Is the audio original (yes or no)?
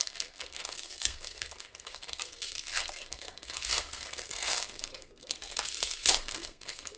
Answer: no